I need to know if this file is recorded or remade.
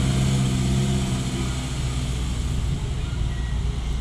recorded